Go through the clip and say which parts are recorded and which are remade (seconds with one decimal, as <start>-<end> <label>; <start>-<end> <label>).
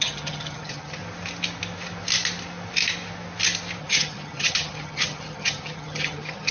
0.0-1.0 remade; 1.0-3.8 recorded; 3.8-6.5 remade